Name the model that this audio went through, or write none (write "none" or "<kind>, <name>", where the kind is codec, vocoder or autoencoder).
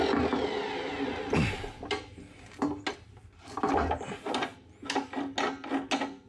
none